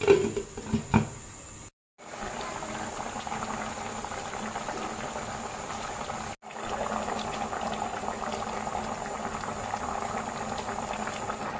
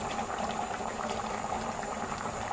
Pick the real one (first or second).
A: first